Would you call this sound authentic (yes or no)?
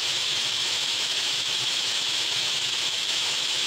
no